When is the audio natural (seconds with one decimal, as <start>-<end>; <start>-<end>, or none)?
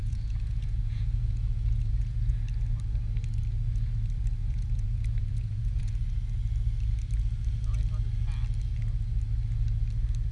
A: 2.3-4.4; 5.9-10.3